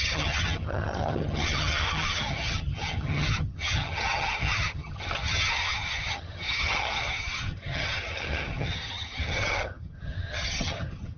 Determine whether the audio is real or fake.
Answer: fake